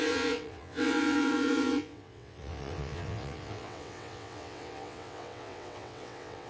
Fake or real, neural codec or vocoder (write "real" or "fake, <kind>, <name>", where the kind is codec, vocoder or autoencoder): fake, vocoder, WaveNeXt